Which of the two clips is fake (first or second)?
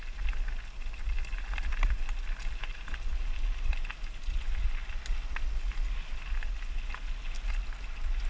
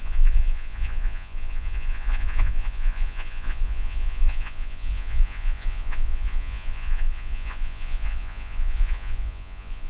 second